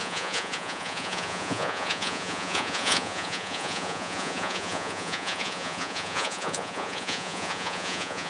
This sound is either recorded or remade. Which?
remade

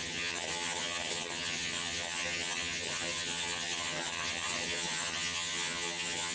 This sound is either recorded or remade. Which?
remade